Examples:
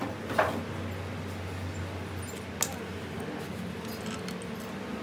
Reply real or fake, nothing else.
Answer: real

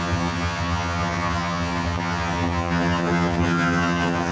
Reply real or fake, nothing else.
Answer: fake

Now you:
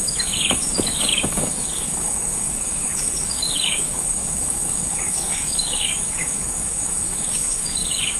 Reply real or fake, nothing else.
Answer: fake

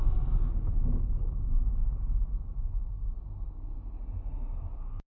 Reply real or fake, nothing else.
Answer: real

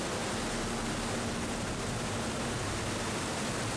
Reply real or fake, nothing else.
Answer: real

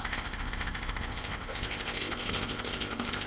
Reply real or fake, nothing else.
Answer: fake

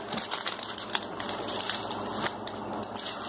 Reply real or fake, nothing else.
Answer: real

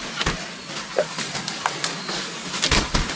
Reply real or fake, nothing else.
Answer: real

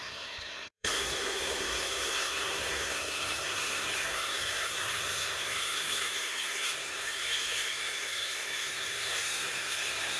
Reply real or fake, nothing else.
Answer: fake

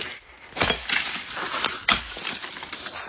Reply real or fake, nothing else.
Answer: real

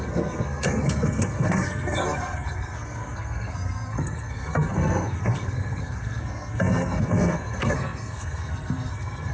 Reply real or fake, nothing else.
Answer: fake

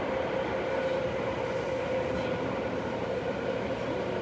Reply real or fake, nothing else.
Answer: real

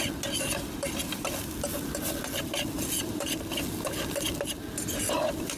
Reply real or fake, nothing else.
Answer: real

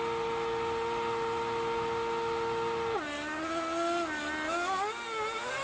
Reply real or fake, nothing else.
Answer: real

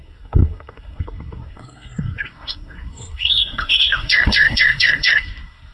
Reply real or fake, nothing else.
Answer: fake